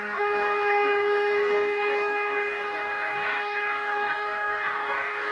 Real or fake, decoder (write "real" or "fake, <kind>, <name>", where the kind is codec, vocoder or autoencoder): fake, codec, DAC